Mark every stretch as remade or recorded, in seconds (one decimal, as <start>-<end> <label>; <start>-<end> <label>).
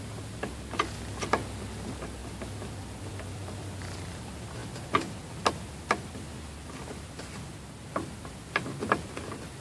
0.0-9.6 recorded